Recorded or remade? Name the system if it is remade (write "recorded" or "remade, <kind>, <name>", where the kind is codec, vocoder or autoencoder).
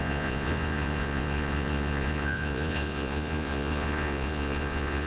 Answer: remade, vocoder, Vocos